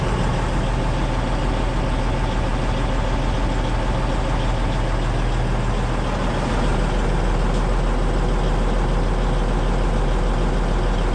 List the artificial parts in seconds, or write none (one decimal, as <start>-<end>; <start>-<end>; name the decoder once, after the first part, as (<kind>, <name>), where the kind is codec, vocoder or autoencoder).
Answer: none